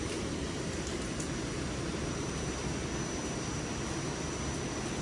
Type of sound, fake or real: real